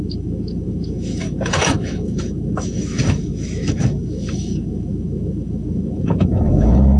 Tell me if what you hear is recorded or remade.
remade